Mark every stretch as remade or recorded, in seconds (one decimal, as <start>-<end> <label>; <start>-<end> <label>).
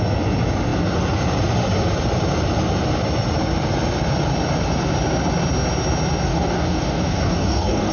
0.0-6.3 recorded; 6.3-7.9 remade